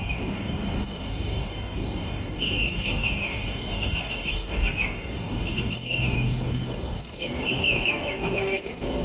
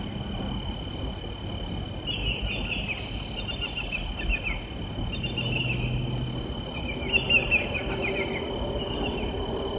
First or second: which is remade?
first